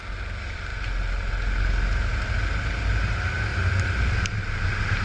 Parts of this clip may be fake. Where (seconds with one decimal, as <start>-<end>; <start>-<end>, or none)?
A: none